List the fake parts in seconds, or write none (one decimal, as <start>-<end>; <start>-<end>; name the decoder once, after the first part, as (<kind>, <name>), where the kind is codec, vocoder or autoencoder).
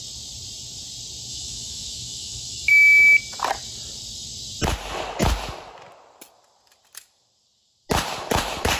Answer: 1.3-2.7 (autoencoder, DAC-VAE)